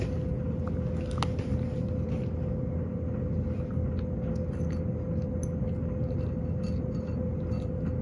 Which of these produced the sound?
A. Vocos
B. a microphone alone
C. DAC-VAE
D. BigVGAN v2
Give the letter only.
B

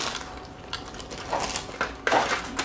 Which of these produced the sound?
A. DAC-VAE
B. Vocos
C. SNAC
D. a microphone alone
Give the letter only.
D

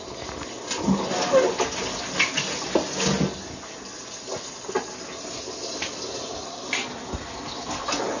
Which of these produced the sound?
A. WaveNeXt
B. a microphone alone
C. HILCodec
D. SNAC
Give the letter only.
B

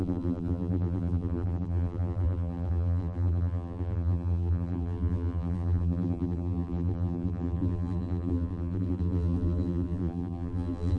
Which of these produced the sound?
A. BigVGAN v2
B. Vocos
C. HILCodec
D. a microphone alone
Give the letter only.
A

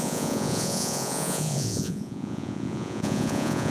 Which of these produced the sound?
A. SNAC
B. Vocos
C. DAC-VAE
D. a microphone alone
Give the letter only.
B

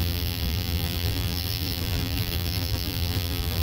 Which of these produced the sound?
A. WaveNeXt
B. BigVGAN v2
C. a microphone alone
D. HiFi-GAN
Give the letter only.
B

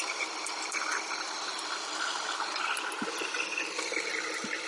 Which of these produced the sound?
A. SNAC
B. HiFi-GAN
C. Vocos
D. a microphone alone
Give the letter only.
D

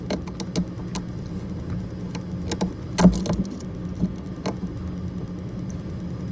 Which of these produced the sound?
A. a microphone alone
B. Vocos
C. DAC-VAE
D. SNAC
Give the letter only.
A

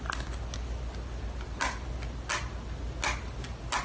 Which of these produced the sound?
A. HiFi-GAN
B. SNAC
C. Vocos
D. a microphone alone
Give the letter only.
D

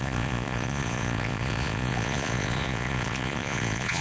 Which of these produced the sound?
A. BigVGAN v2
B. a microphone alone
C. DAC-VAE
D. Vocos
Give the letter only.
D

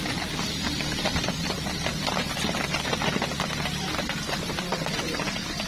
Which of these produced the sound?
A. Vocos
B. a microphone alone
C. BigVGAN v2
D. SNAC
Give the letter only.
C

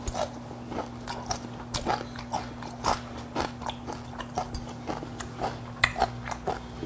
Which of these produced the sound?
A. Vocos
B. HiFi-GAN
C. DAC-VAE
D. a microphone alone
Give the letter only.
D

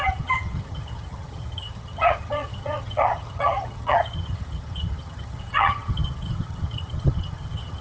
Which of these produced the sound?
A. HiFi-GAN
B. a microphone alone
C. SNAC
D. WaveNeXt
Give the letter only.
A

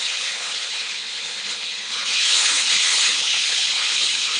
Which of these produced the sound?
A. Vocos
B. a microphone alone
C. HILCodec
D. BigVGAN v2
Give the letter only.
C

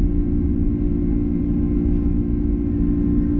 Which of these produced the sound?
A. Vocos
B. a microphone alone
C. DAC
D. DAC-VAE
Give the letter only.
B